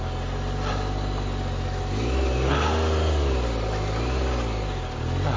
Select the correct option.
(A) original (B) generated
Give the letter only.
A